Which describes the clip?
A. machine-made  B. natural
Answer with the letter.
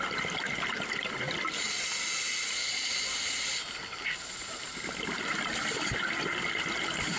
B